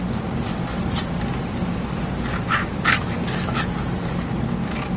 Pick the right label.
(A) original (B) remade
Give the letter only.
A